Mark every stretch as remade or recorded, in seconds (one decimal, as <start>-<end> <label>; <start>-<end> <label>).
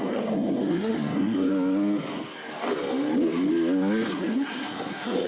0.0-1.5 remade; 1.5-4.1 recorded; 4.1-5.3 remade